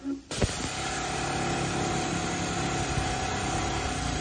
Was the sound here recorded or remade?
recorded